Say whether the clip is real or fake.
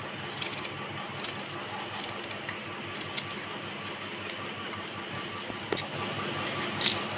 real